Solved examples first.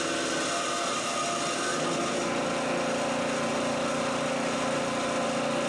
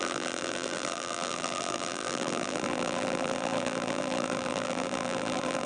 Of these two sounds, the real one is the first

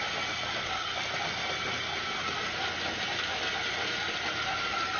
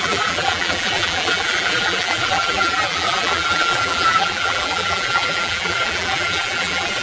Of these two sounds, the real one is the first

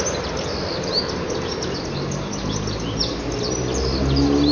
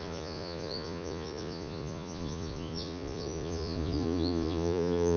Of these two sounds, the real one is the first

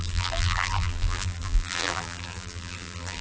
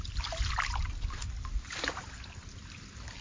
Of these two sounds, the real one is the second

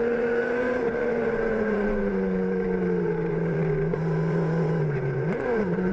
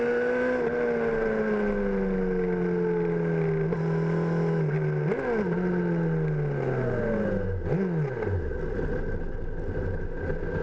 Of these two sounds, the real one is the second